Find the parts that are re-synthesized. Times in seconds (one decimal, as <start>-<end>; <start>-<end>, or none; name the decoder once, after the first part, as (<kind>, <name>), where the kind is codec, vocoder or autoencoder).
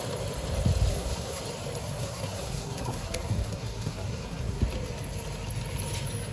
0.9-1.4 (codec, SNAC); 1.8-4.6